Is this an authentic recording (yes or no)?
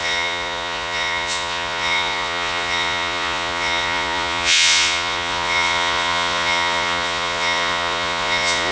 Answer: no